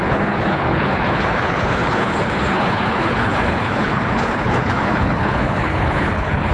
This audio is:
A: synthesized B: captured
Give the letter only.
A